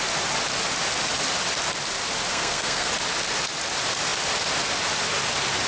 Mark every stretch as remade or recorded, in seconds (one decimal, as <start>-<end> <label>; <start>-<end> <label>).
0.0-2.3 recorded; 2.3-2.9 remade; 2.9-5.7 recorded